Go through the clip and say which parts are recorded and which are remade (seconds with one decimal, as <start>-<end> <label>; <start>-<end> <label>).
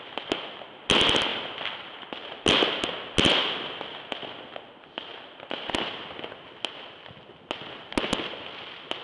0.0-9.0 recorded